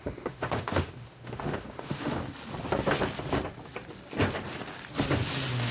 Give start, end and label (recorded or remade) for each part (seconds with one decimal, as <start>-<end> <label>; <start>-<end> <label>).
0.0-2.2 remade; 2.2-5.7 recorded